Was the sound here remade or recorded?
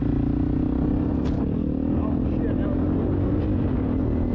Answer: recorded